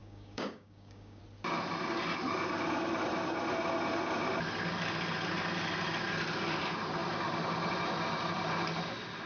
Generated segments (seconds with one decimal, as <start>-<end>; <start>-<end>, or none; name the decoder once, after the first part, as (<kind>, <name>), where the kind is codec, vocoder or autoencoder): 0.0-1.2 (codec, DAC)